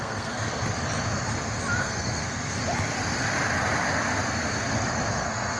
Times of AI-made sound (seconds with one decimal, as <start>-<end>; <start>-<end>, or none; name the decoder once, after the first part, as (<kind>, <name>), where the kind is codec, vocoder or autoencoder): 0.0-0.5 (codec, SNAC); 1.8-2.6; 5.1-5.6